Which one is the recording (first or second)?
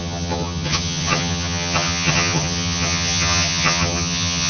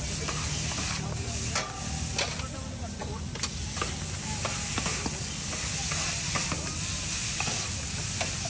second